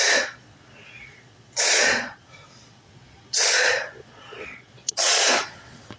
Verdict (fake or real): fake